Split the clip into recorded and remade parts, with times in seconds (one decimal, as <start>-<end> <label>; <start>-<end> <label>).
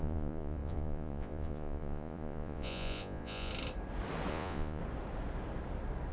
0.0-3.5 remade; 3.5-4.3 recorded; 4.3-4.8 remade; 4.8-6.1 recorded